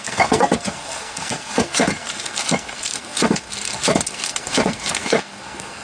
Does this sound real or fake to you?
fake